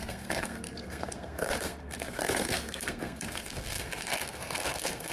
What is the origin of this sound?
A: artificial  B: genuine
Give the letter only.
A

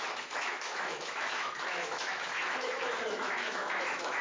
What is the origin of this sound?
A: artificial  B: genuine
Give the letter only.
A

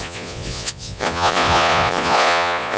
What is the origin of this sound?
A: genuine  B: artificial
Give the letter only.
B